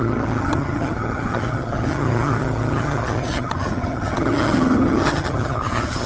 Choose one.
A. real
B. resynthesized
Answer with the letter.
B